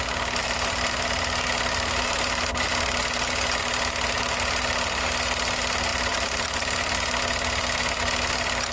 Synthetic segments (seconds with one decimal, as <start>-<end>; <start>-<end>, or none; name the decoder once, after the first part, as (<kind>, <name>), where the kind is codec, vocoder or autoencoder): 0.4-0.9 (vocoder, BigVGAN v2); 5.9-6.8